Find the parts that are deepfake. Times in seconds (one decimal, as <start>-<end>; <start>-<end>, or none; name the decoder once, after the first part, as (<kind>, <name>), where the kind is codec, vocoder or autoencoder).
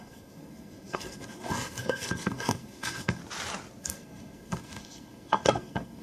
0.0-3.2 (codec, SNAC); 3.8-6.0